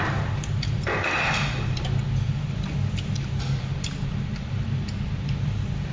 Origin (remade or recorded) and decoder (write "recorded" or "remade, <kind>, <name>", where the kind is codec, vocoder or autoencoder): remade, vocoder, BigVGAN v2